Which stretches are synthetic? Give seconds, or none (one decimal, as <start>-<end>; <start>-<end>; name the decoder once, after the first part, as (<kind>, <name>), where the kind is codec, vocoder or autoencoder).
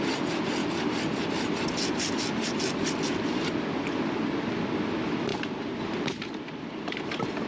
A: 0.6-3.4 (vocoder, BigVGAN v2); 5.3-5.8